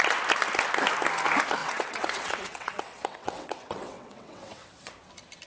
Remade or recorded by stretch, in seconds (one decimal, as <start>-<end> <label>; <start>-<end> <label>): 0.0-1.6 recorded; 1.6-4.9 remade; 4.9-5.5 recorded

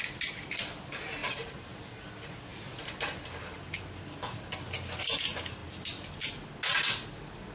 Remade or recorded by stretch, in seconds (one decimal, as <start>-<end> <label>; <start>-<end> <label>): 0.0-7.5 recorded

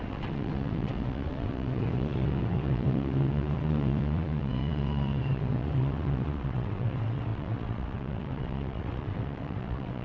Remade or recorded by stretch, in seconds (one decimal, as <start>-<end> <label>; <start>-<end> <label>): 0.0-10.0 remade

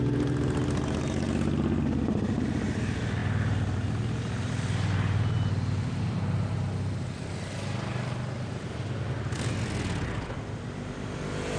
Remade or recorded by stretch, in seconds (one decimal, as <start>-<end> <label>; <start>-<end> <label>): 0.0-11.6 recorded